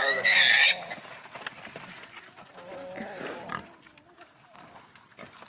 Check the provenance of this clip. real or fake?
real